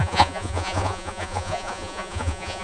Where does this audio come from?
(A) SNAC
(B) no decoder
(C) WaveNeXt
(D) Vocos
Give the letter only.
D